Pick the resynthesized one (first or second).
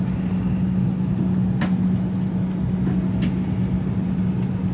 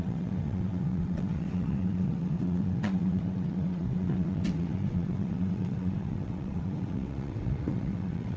second